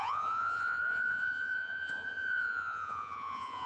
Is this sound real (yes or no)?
no